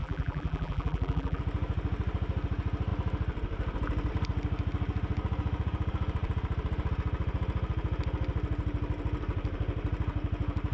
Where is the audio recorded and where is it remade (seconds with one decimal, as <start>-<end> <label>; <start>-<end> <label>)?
0.0-1.4 remade; 1.4-10.7 recorded